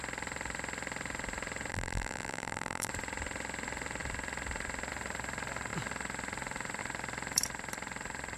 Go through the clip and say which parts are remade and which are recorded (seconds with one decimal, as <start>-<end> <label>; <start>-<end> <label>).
0.0-1.7 recorded; 1.7-2.9 remade; 2.9-8.4 recorded